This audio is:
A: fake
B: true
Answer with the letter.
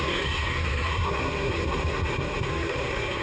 A